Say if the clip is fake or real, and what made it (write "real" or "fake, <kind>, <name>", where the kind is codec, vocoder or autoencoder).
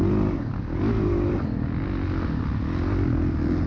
real